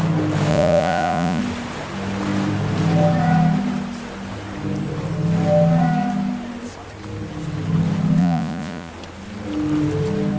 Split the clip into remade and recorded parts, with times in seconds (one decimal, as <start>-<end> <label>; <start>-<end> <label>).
0.0-0.5 recorded; 0.5-1.4 remade; 1.4-8.2 recorded; 8.2-8.9 remade; 8.9-10.4 recorded